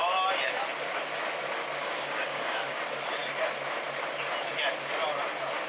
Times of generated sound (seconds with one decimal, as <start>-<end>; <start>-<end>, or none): 1.8-2.6